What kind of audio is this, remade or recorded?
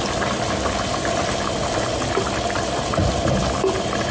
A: recorded